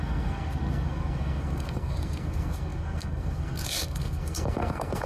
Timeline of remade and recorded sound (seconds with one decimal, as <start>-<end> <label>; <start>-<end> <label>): 0.0-5.1 remade